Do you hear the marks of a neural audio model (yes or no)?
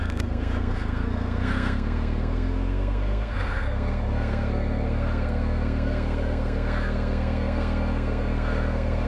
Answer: yes